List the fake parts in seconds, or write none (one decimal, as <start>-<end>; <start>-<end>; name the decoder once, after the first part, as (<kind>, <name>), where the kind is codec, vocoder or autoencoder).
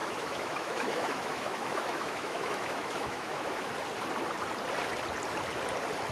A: 0.0-3.7 (autoencoder, DAC-VAE)